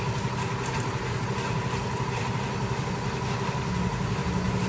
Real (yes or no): yes